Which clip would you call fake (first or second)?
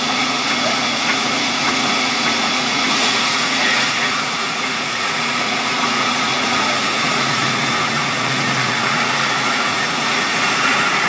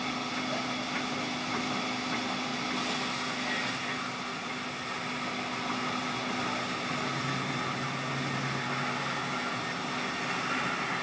first